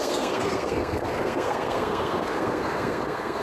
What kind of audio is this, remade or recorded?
remade